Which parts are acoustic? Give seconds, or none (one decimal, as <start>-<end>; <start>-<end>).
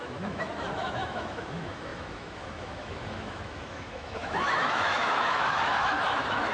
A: none